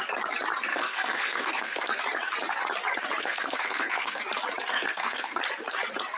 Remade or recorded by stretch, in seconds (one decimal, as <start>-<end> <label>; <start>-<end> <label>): 0.0-0.7 recorded; 0.7-2.0 remade; 2.0-3.2 recorded; 3.2-4.2 remade; 4.2-4.7 recorded; 4.7-5.4 remade; 5.4-6.2 recorded